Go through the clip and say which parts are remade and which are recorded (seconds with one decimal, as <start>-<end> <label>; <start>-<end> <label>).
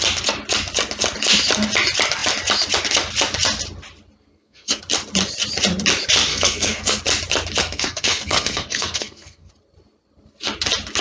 0.0-4.3 recorded; 4.3-4.8 remade; 4.8-6.3 recorded; 6.3-7.0 remade; 7.0-7.6 recorded; 7.6-9.5 remade; 9.5-11.0 recorded